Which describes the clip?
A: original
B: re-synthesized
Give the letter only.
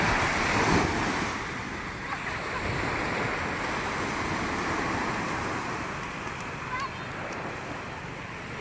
A